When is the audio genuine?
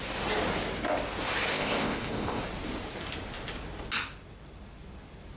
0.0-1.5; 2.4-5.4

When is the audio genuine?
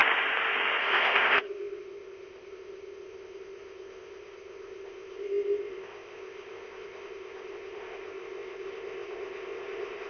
0.0-0.8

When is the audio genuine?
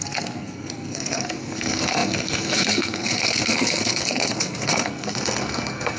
none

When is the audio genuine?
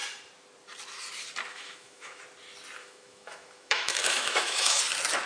0.0-1.5; 2.2-2.8; 4.8-5.3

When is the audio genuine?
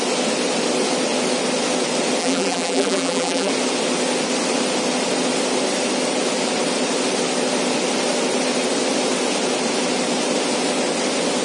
0.0-2.2; 3.5-11.4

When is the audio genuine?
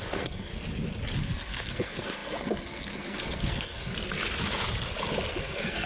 0.5-1.2; 3.9-5.3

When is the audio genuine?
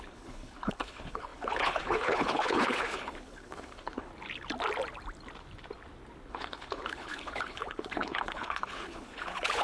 4.1-6.3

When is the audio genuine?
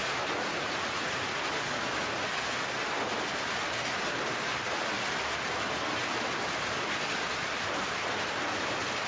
0.0-0.5; 1.4-9.1